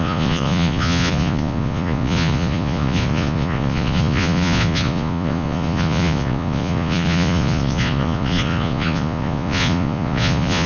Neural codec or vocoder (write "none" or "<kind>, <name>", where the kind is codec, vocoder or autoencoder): vocoder, Vocos